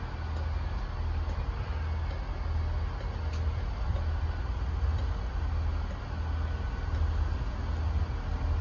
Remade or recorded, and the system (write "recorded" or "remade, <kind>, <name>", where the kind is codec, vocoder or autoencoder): recorded